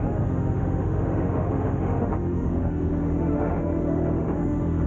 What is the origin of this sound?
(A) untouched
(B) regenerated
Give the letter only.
B